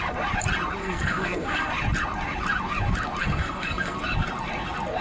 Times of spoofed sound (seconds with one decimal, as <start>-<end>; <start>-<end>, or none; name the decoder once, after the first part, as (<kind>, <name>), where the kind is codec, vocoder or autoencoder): 0.8-1.7 (codec, SNAC); 3.2-4.0